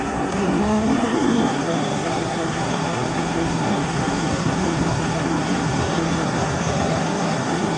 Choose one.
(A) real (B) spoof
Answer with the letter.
B